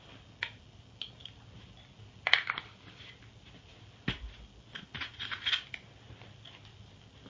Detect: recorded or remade recorded